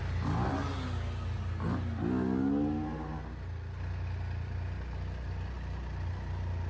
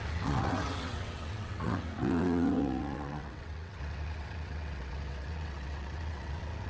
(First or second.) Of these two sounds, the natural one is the first